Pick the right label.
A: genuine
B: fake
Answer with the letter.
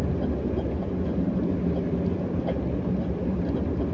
A